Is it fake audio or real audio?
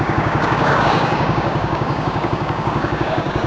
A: fake